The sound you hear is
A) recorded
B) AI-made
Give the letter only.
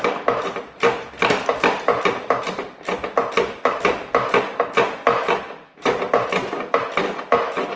A